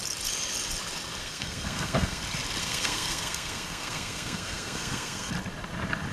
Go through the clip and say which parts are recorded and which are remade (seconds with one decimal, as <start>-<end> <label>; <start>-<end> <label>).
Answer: 0.0-1.2 recorded; 1.2-2.2 remade; 2.2-2.6 recorded; 2.6-5.3 remade; 5.3-6.1 recorded